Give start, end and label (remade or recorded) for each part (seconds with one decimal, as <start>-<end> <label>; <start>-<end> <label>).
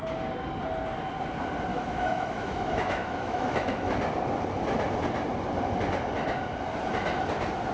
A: 0.0-1.7 recorded; 1.7-3.9 remade; 3.9-7.7 recorded